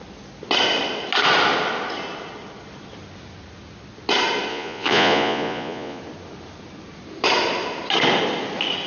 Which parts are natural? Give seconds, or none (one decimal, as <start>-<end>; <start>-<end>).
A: 0.0-4.5; 6.0-8.9